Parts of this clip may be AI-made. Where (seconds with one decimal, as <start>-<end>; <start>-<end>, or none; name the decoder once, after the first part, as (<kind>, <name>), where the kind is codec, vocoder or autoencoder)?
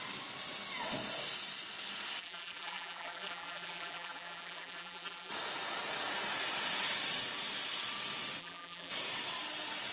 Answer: 2.2-5.3 (vocoder, BigVGAN v2); 8.4-8.9